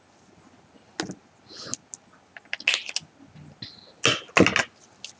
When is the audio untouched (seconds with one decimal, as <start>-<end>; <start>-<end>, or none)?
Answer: 0.0-5.2